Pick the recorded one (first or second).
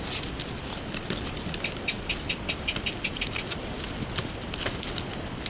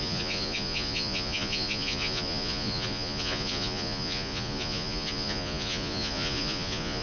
first